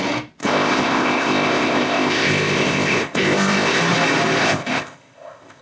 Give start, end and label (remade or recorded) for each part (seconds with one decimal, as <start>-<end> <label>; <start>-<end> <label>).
0.0-0.4 recorded; 0.4-3.8 remade; 3.8-4.4 recorded; 4.4-5.6 remade